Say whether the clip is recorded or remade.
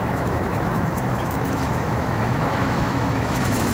remade